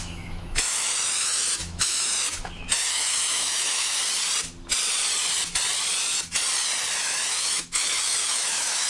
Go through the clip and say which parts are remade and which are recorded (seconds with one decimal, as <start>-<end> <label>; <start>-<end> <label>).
0.0-4.0 remade; 4.0-7.0 recorded; 7.0-8.9 remade

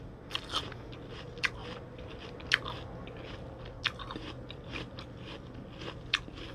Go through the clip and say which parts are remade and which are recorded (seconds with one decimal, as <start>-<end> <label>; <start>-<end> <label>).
0.0-6.5 recorded

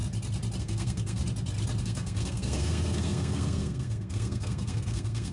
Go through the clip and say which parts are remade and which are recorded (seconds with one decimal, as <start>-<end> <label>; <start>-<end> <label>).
0.0-0.6 recorded; 0.6-1.2 remade; 1.2-1.8 recorded; 1.8-5.3 remade

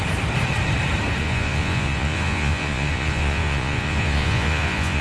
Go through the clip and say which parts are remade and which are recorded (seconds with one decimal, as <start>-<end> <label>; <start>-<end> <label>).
0.0-1.2 recorded; 1.2-5.0 remade

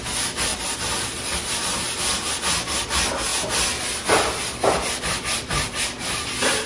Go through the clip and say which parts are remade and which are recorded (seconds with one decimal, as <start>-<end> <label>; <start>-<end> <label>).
0.0-6.7 recorded